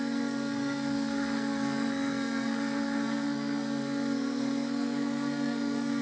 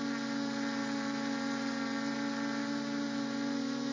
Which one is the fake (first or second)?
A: first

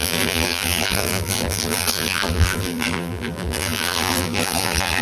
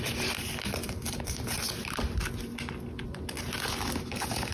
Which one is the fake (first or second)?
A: first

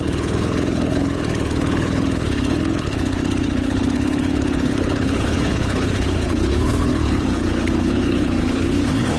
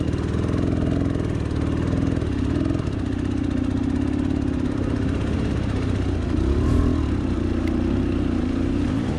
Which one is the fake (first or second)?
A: first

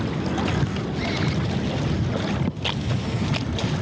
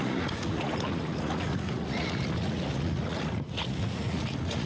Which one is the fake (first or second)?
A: second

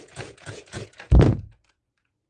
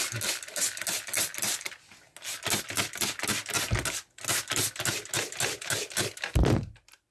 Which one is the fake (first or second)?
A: first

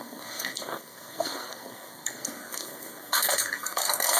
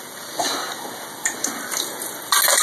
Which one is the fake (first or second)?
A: first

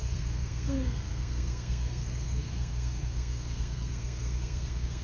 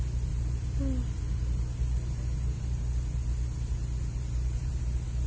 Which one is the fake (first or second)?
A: first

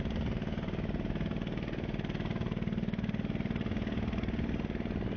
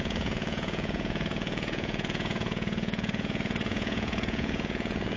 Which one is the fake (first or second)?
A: second